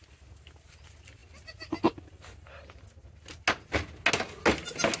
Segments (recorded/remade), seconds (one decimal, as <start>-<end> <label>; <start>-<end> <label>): 0.0-5.0 recorded